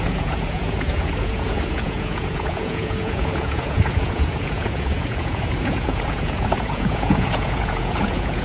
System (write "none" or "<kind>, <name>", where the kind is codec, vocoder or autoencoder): vocoder, Vocos